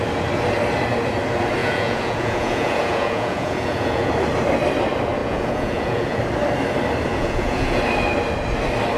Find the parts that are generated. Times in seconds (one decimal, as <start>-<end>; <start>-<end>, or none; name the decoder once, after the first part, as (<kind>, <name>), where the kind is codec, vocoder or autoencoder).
1.6-4.1 (vocoder, Vocos); 5.2-6.2; 7.1-7.8